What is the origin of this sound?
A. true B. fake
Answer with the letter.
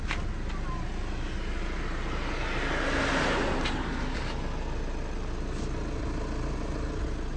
A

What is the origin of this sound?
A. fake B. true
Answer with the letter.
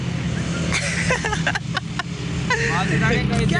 B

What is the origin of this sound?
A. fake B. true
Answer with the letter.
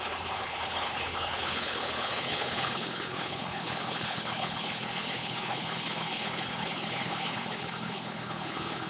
A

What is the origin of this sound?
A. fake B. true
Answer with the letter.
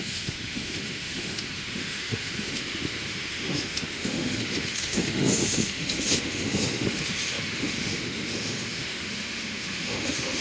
A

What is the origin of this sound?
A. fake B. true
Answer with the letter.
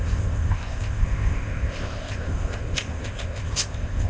A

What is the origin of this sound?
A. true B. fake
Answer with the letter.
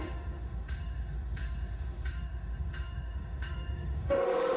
B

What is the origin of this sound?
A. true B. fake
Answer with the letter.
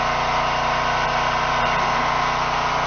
B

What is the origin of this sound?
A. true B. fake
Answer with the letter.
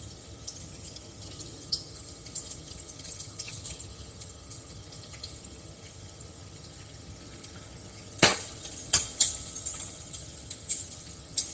B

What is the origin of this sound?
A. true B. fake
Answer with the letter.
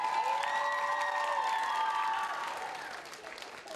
A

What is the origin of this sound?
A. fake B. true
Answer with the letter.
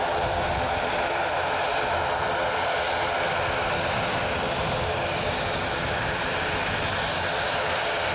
B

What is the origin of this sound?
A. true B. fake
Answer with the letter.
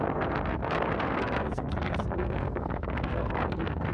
B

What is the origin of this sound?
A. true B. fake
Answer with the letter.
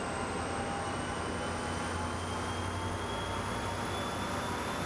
A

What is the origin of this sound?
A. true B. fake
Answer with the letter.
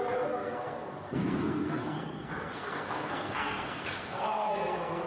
B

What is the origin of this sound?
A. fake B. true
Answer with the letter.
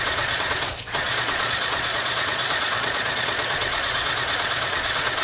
A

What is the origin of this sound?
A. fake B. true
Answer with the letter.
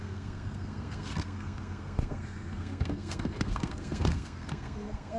A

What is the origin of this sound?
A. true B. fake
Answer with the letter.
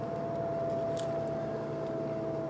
A